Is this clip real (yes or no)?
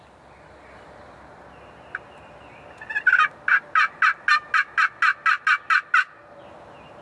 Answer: yes